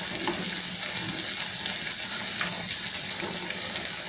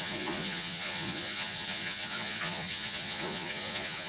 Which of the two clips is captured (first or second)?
first